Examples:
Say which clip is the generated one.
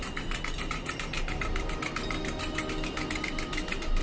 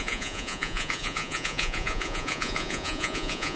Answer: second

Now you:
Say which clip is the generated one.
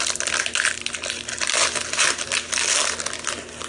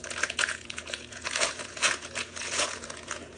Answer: second